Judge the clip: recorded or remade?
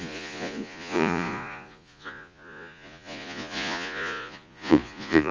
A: remade